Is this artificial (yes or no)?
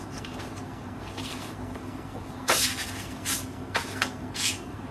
yes